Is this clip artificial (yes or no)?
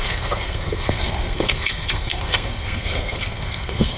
yes